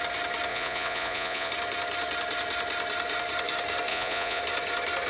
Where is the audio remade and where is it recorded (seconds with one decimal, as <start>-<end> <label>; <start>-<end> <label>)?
0.0-0.5 recorded; 0.5-1.5 remade; 1.5-3.9 recorded; 3.9-4.4 remade; 4.4-5.1 recorded